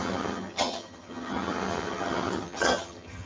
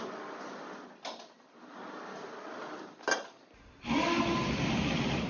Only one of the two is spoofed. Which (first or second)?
first